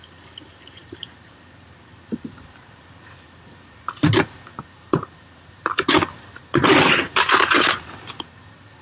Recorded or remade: remade